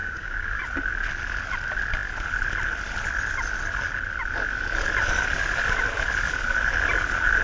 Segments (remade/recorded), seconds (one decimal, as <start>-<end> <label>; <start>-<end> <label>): 0.0-0.6 remade; 0.6-7.4 recorded